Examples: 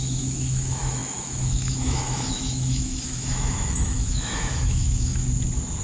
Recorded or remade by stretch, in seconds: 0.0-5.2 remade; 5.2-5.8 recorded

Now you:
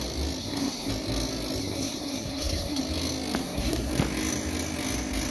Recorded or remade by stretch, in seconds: 0.0-0.4 recorded; 0.4-0.9 remade; 0.9-1.6 recorded; 1.6-2.8 remade; 2.8-3.4 recorded; 3.4-3.9 remade; 3.9-5.3 recorded

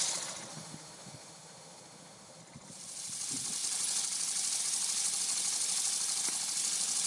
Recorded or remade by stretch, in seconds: 0.0-0.5 recorded; 0.5-2.4 remade; 2.4-7.1 recorded

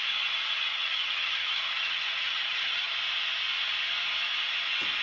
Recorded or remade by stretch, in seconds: 0.0-0.7 recorded; 0.7-2.9 remade; 2.9-5.0 recorded

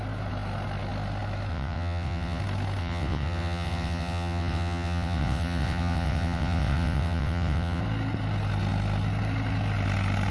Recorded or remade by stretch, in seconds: 0.0-1.5 recorded; 1.5-2.4 remade; 2.4-2.8 recorded; 2.8-7.8 remade; 7.8-10.3 recorded